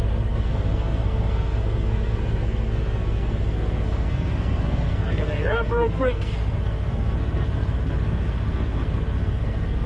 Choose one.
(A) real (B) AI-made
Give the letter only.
B